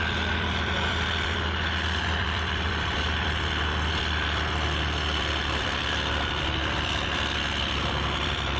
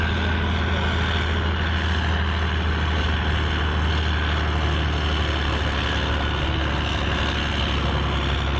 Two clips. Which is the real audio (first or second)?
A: second